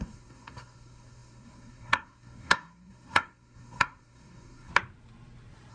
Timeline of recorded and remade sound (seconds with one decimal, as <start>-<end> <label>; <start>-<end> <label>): 0.0-4.7 remade; 4.7-5.7 recorded